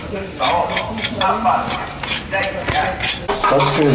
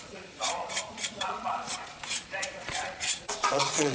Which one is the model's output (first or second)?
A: second